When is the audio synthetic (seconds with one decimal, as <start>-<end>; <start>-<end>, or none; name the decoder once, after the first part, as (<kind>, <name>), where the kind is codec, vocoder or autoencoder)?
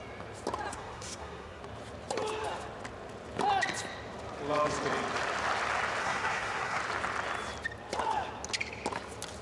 0.7-1.6 (codec, SNAC); 6.0-6.8